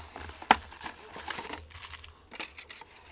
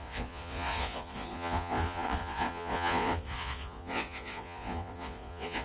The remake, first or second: second